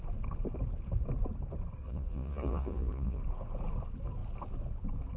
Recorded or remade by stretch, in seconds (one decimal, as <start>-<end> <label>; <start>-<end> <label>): 0.0-1.8 recorded; 1.8-3.2 remade; 3.2-5.2 recorded